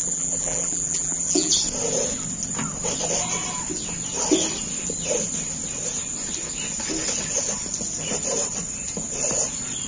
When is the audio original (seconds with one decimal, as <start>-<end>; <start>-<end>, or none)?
1.5-9.9